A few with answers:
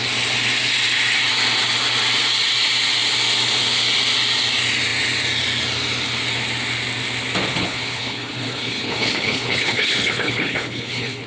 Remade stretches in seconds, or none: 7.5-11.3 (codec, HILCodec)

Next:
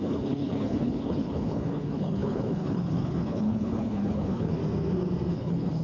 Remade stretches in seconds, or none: 0.0-4.6 (codec, HILCodec); 5.3-5.8

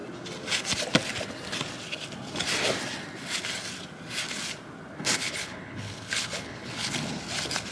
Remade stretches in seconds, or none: 5.0-6.9 (codec, HILCodec)